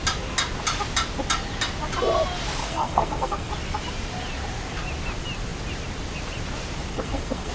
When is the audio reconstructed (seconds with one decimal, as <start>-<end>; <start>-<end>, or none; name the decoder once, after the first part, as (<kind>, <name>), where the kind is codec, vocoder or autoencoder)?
2.6-3.5 (codec, SNAC); 6.9-7.5